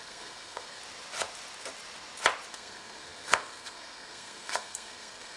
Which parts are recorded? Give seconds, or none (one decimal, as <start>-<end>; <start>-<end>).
0.8-2.5